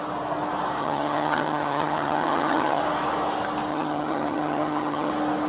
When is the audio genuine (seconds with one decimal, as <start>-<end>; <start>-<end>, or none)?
0.0-0.8; 2.8-3.7; 5.1-5.5